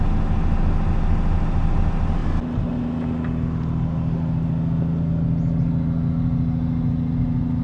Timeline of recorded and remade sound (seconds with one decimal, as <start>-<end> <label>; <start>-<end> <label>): 0.0-7.6 recorded